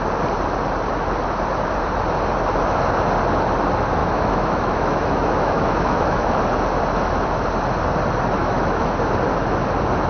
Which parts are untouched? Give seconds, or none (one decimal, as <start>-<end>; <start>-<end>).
0.0-4.0; 6.4-8.4; 8.9-10.1